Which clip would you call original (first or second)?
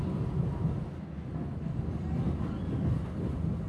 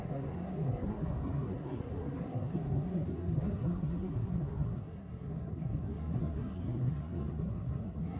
first